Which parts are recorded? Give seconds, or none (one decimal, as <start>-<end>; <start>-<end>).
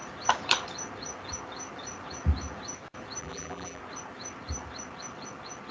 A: 0.0-3.2; 3.8-5.7